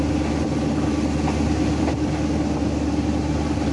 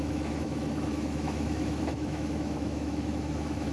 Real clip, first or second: first